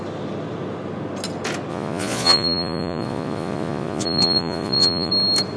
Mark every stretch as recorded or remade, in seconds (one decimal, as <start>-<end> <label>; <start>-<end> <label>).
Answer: 0.0-1.7 recorded; 1.7-5.1 remade; 5.1-5.6 recorded